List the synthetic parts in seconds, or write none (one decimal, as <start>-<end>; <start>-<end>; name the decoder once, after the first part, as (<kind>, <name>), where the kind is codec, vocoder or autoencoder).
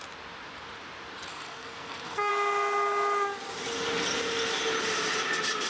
1.3-2.3 (codec, SNAC)